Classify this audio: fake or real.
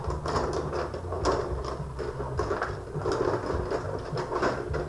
real